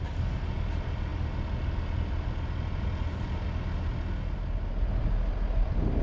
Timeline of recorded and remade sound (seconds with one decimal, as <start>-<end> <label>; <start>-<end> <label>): 0.0-6.0 recorded